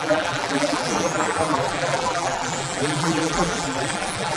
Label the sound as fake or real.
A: fake